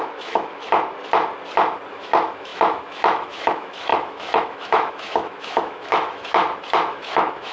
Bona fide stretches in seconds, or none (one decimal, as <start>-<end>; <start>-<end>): 0.6-1.9; 6.4-6.9